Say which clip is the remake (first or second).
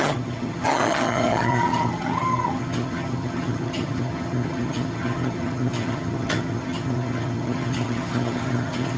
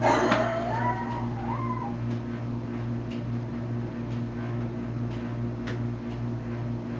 first